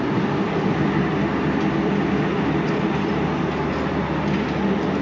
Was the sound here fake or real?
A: real